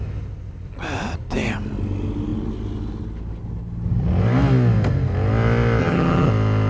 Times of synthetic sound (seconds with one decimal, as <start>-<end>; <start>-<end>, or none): 5.8-6.3